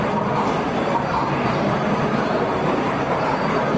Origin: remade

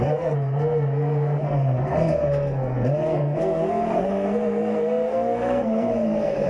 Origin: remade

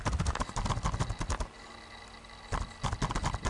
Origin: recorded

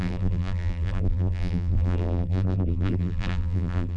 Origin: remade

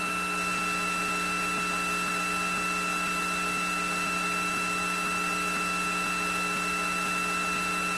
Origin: recorded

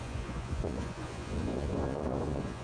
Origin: remade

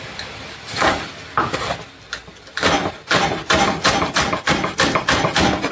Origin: recorded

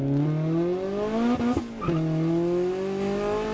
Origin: recorded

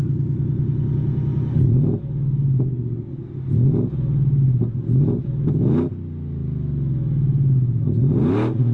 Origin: recorded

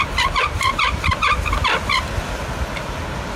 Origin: recorded